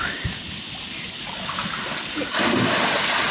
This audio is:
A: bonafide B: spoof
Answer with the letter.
A